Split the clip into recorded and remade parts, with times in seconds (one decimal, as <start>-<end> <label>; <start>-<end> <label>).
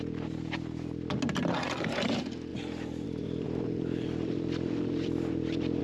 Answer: 0.0-2.5 recorded; 2.5-5.8 remade